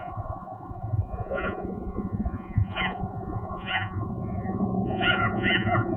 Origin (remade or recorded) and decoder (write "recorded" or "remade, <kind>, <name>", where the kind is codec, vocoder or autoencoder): remade, vocoder, Vocos